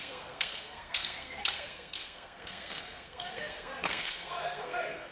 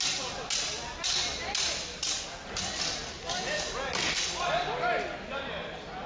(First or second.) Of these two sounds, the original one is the second